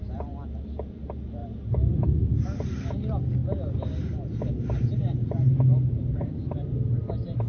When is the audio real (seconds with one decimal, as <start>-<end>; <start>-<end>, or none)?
0.0-4.9; 7.0-7.5

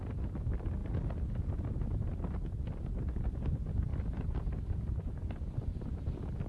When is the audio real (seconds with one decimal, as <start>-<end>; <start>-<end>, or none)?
0.0-6.5

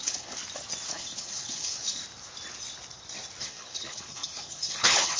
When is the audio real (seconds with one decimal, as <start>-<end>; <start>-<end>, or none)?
0.4-0.9; 2.0-3.4

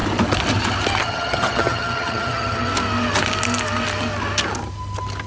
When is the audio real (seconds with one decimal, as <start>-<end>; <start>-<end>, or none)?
0.0-1.0; 2.7-5.3